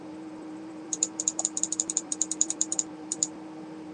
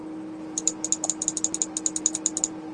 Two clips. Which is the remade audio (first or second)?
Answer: first